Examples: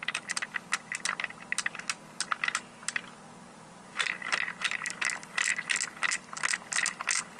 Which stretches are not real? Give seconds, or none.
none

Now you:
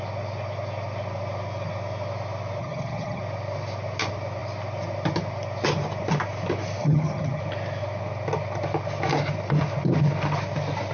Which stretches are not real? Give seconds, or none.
2.6-3.2 (vocoder, HiFi-GAN); 6.8-7.4

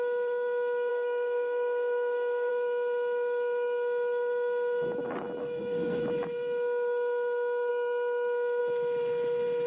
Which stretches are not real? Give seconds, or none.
0.9-2.5 (codec, SNAC); 5.4-6.0